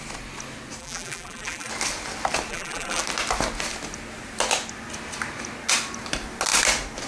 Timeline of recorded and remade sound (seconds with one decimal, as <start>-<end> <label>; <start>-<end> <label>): 0.0-0.8 recorded; 0.8-1.7 remade; 1.7-2.5 recorded; 2.5-3.0 remade; 3.0-7.1 recorded